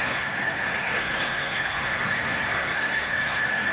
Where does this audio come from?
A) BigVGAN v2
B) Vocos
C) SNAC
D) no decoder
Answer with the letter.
C